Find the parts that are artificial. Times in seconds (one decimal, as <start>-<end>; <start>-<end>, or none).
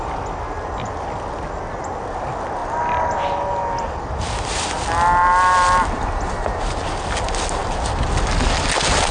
none